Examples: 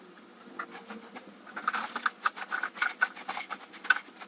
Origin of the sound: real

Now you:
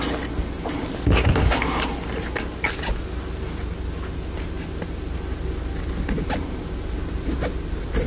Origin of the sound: real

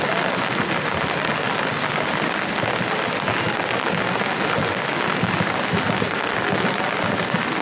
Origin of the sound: real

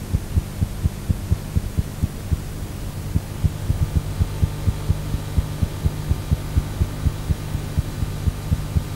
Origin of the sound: real